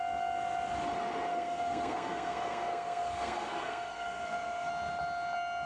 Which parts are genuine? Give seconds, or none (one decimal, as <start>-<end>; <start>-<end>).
0.0-1.3; 4.7-5.7